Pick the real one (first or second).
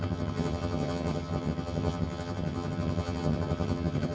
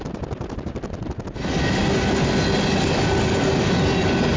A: second